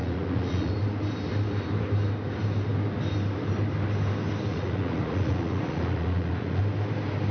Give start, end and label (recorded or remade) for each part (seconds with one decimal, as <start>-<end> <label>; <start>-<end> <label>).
0.0-0.7 remade; 0.7-4.5 recorded; 4.5-6.6 remade; 6.6-7.3 recorded